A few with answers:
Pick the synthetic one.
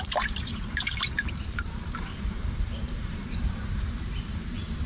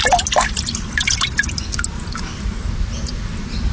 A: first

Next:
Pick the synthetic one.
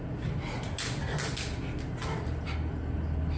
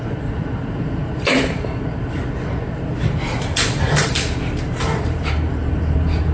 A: second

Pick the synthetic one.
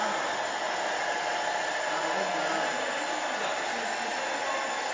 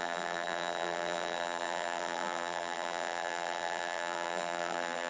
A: second